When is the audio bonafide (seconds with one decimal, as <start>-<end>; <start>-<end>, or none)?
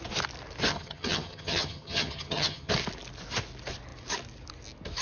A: 0.0-0.7; 2.7-5.0